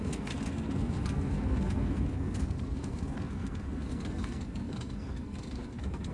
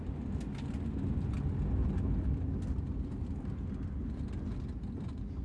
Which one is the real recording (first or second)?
second